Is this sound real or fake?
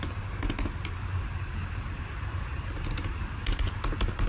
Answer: real